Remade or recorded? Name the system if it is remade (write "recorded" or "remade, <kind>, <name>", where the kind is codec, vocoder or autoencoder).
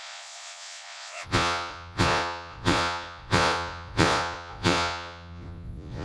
remade, vocoder, Vocos